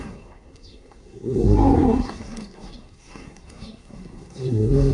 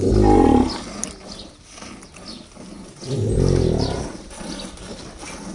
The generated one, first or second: first